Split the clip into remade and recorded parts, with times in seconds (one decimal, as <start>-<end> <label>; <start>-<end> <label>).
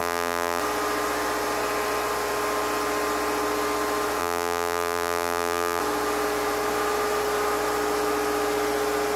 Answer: 0.0-0.6 remade; 0.6-4.2 recorded; 4.2-5.8 remade; 5.8-9.2 recorded